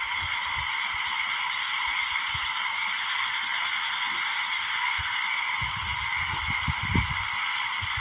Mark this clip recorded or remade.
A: recorded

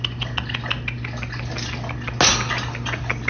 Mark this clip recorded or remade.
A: recorded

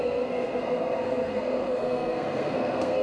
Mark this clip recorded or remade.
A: remade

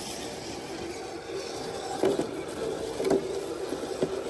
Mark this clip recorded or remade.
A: recorded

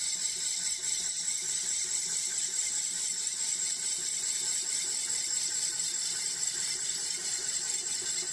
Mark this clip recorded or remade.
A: remade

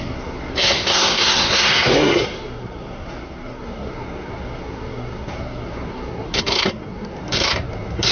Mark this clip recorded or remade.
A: remade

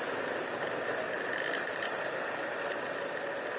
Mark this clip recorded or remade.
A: recorded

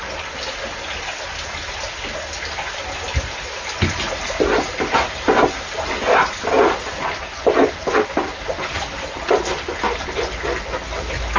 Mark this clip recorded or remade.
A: recorded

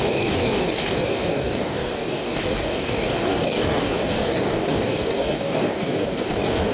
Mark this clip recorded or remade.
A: remade